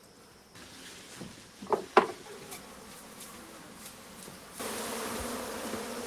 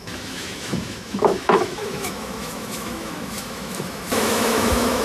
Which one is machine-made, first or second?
second